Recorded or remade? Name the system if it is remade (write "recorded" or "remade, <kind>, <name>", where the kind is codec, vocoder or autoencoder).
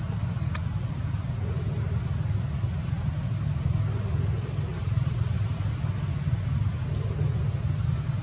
recorded